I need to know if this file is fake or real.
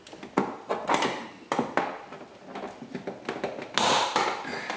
real